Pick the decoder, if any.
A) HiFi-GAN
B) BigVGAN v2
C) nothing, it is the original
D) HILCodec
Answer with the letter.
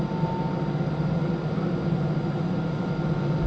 C